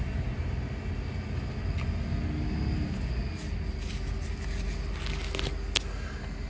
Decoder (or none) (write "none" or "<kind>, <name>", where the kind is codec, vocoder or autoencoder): none